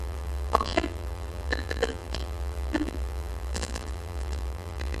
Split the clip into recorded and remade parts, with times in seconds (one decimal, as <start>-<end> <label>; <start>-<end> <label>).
0.0-5.0 remade

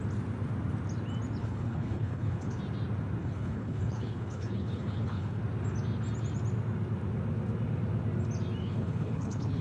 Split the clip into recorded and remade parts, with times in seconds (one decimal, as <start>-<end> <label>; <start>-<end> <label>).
0.0-1.4 recorded; 1.4-2.6 remade; 2.6-3.2 recorded; 3.2-5.4 remade; 5.4-8.6 recorded; 8.6-9.6 remade

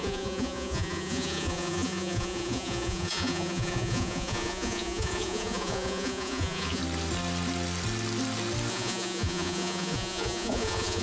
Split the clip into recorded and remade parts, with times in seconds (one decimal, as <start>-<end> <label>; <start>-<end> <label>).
0.0-6.8 remade; 6.8-8.7 recorded; 8.7-11.0 remade